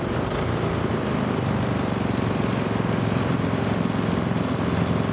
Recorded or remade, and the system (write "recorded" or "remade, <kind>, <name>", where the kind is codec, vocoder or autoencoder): recorded